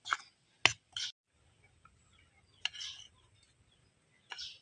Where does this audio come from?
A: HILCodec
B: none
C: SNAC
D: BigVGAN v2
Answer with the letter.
B